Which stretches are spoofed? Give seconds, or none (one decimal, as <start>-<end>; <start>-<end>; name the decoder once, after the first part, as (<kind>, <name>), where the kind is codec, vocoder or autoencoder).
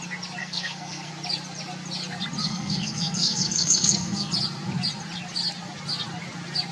0.4-1.1 (codec, SNAC); 2.4-4.3